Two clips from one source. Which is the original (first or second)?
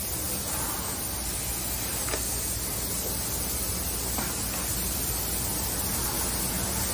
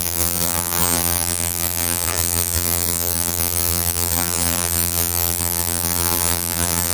first